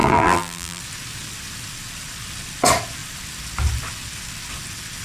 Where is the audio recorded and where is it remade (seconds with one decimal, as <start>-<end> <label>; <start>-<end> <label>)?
0.0-0.8 remade; 0.8-5.0 recorded